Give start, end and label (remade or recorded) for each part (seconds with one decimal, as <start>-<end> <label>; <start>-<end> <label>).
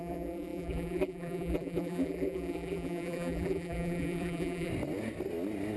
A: 0.0-4.7 remade; 4.7-5.8 recorded